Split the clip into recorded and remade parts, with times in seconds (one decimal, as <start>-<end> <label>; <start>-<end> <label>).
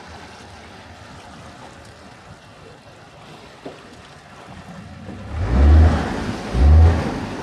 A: 0.0-7.4 recorded